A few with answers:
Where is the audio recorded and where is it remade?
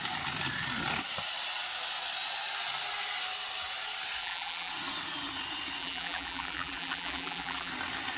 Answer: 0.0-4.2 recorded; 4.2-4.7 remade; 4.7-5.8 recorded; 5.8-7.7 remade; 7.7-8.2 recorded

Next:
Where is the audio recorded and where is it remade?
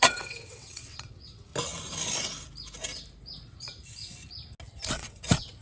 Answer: 0.0-1.5 remade; 1.5-4.9 recorded; 4.9-5.6 remade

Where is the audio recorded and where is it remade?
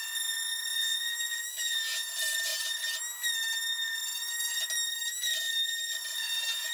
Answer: 0.0-0.7 recorded; 0.7-2.1 remade; 2.1-6.7 recorded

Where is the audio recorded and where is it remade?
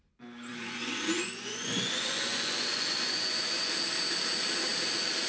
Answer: 0.0-0.5 recorded; 0.5-3.7 remade; 3.7-5.3 recorded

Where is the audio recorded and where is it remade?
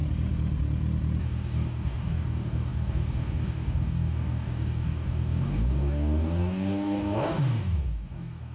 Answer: 0.0-1.2 recorded; 1.2-8.5 remade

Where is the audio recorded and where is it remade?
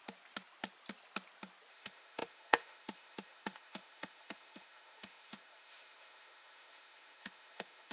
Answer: 0.0-1.7 recorded; 1.7-7.9 remade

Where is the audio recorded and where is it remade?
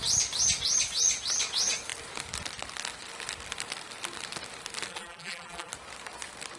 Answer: 0.0-4.9 recorded; 4.9-5.7 remade; 5.7-6.6 recorded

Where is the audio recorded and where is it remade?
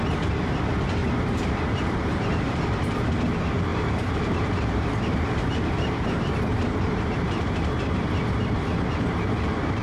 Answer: 0.0-1.0 recorded; 1.0-3.1 remade; 3.1-3.7 recorded; 3.7-8.2 remade; 8.2-9.8 recorded